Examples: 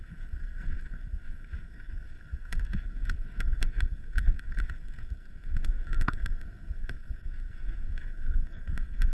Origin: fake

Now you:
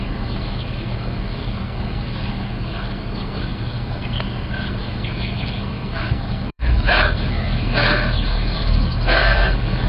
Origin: fake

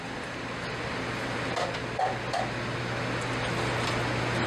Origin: real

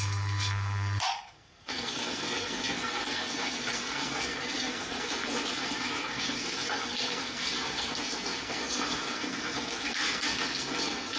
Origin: fake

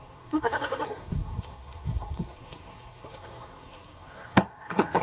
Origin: fake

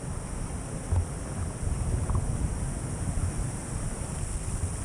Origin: real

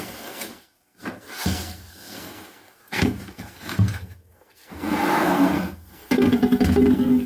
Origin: fake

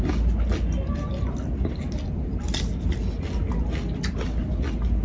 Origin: real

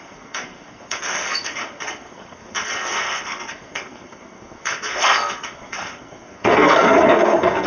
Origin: fake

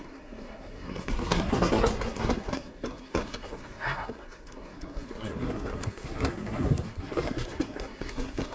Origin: fake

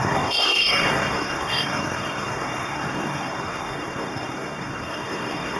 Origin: fake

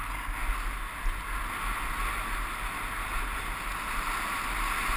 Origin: real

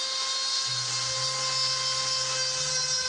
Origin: real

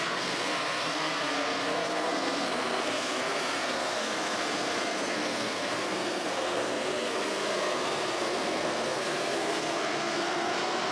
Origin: fake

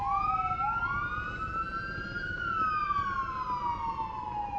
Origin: real